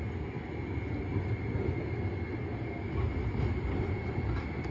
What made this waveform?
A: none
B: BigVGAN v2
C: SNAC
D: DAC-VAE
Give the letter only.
A